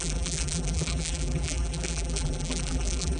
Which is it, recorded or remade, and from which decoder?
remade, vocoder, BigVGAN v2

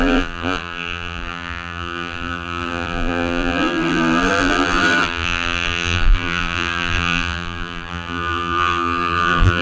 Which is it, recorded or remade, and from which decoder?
remade, vocoder, BigVGAN v2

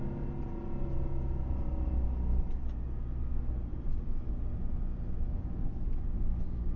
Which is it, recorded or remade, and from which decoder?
recorded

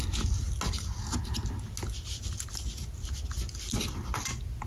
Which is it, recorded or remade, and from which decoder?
recorded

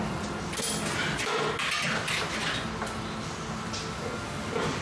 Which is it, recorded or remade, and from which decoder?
recorded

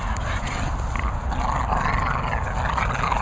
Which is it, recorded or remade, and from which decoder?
recorded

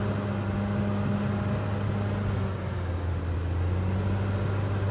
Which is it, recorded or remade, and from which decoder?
recorded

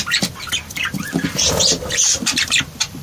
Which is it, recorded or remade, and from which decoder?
remade, vocoder, BigVGAN v2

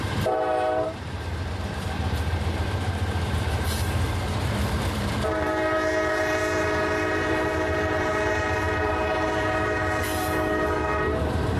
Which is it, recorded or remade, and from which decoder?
remade, vocoder, BigVGAN v2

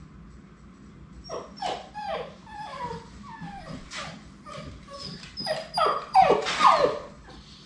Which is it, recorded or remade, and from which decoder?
recorded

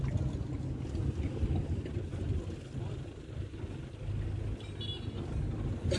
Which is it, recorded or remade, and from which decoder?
recorded